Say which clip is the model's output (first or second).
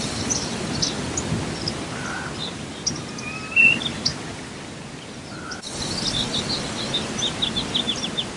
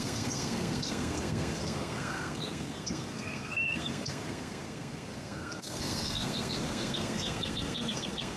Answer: second